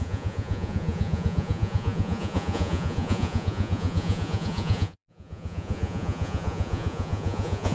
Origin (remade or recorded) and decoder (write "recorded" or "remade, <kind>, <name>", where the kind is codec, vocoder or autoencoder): remade, vocoder, Vocos